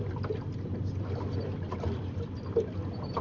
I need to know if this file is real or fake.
real